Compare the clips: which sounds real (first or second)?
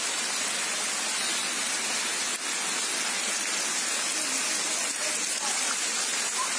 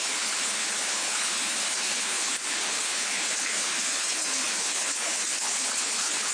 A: first